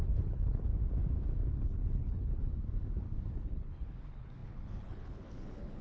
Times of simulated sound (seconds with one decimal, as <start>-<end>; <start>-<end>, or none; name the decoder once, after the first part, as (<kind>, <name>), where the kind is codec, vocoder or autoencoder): 0.0-0.7 (codec, HILCodec); 1.5-2.4; 3.3-5.8